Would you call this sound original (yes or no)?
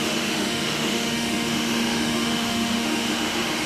no